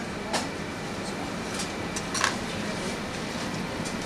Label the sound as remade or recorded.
recorded